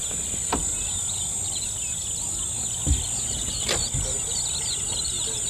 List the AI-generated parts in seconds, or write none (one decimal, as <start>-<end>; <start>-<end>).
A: none